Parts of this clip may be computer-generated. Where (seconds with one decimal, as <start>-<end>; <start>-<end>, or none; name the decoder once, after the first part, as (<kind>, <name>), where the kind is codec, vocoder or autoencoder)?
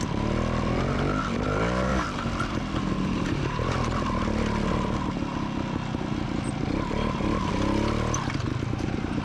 1.9-5.1 (vocoder, BigVGAN v2)